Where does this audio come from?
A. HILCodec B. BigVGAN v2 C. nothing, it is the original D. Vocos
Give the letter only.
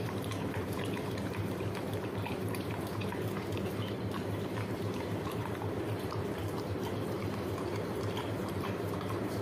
B